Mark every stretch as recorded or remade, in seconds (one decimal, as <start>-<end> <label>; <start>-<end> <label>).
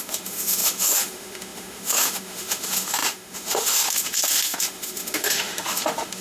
0.0-6.2 remade